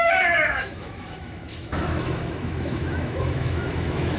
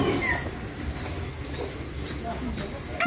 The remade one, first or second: first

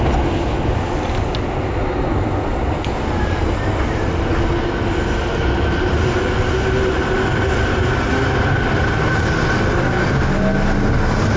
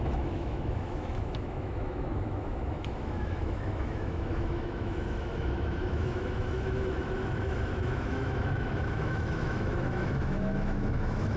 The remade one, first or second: second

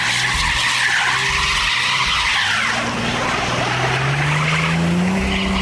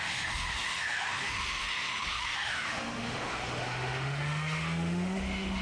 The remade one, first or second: second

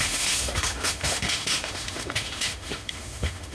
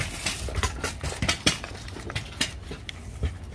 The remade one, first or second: first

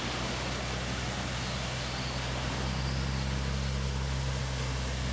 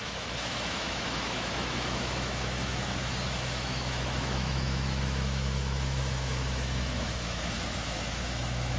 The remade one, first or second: second